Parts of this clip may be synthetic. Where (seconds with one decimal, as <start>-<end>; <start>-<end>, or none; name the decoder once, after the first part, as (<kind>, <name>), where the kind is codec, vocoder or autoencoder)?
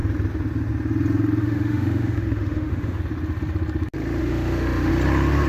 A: 1.4-3.0 (autoencoder, DAC-VAE); 4.2-4.9